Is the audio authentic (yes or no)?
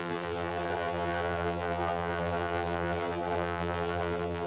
no